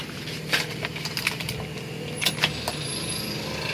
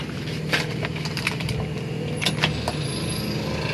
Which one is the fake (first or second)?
first